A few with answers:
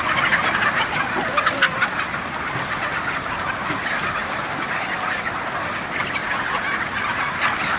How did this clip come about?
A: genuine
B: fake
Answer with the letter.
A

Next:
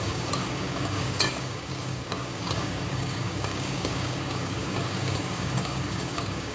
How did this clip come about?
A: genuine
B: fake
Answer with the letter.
B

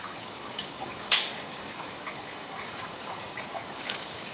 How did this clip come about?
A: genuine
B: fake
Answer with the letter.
B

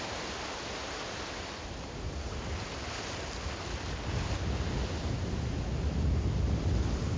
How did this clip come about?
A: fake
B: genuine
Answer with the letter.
B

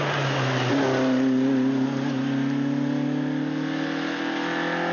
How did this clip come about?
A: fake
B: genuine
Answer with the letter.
B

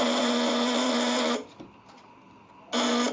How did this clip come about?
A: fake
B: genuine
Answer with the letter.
B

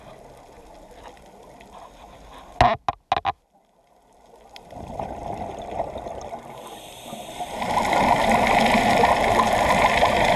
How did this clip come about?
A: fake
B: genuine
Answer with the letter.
B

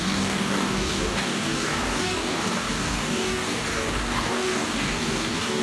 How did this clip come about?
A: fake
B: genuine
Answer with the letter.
A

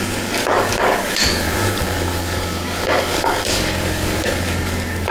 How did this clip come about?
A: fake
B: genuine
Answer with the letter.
A